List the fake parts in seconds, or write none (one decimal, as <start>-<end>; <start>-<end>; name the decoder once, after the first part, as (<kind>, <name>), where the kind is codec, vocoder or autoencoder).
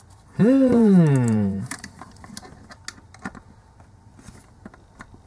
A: 0.4-2.3 (vocoder, BigVGAN v2)